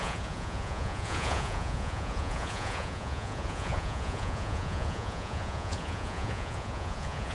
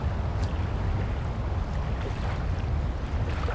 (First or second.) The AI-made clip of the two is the first